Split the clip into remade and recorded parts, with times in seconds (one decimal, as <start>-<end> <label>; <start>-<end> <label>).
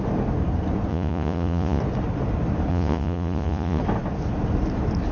0.0-0.9 recorded; 0.9-1.8 remade; 1.8-2.7 recorded; 2.7-3.8 remade; 3.8-5.1 recorded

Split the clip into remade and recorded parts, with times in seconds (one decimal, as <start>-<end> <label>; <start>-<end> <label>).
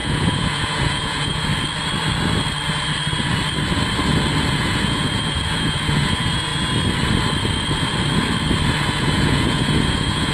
0.0-1.5 remade; 1.5-4.5 recorded; 4.5-6.5 remade; 6.5-8.9 recorded; 8.9-10.3 remade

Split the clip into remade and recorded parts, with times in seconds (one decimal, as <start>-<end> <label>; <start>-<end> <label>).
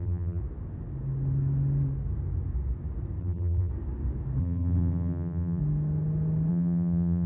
0.0-0.4 remade; 0.4-3.2 recorded; 3.2-3.7 remade; 3.7-4.4 recorded; 4.4-5.6 remade; 5.6-6.5 recorded; 6.5-7.3 remade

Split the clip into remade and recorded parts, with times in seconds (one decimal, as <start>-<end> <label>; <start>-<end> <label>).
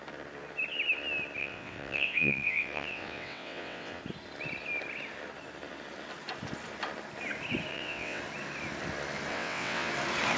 0.0-1.4 recorded; 1.4-4.0 remade; 4.0-7.7 recorded; 7.7-8.2 remade; 8.2-9.3 recorded; 9.3-9.9 remade; 9.9-10.4 recorded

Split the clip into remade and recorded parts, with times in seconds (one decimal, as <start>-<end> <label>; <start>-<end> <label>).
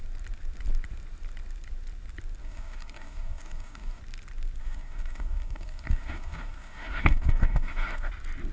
0.0-2.4 recorded; 2.4-4.0 remade; 4.0-4.6 recorded; 4.6-8.1 remade; 8.1-8.5 recorded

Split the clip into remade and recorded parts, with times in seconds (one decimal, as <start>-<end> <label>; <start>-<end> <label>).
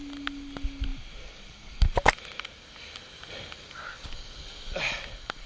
0.0-5.5 recorded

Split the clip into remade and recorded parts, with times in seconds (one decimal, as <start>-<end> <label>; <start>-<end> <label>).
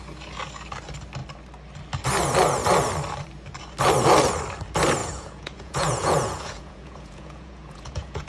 0.0-5.0 recorded; 5.0-8.3 remade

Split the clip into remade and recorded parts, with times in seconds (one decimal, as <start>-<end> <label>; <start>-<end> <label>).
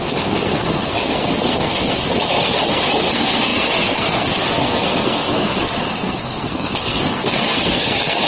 0.0-8.3 remade